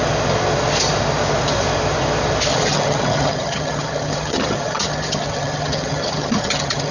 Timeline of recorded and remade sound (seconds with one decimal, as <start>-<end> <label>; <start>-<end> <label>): 0.0-2.5 recorded; 2.5-6.9 remade